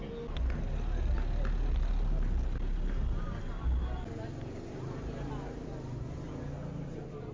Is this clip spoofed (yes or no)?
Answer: no